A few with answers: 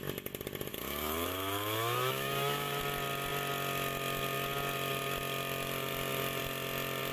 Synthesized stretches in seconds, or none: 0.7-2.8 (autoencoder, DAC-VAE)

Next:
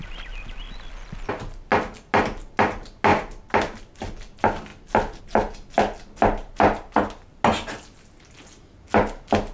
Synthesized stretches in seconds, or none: none

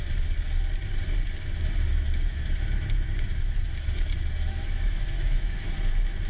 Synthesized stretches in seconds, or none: 1.9-5.7 (autoencoder, DAC-VAE)

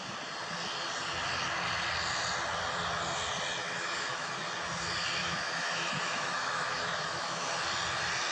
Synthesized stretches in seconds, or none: 3.6-4.3 (autoencoder, DAC-VAE); 5.2-7.5

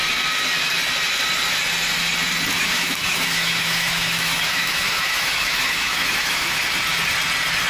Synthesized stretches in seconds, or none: 2.6-6.6 (autoencoder, DAC-VAE)